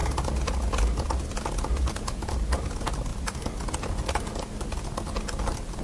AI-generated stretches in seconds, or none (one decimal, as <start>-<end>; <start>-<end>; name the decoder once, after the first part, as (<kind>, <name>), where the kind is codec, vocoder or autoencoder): none